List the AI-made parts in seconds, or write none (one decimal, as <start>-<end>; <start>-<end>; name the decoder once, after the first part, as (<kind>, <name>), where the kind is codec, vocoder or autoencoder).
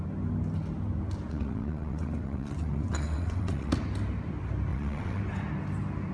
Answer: 1.3-3.7 (vocoder, WaveNeXt); 4.7-5.2